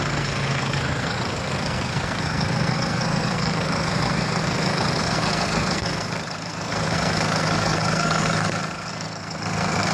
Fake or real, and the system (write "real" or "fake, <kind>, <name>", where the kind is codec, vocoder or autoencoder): fake, codec, SNAC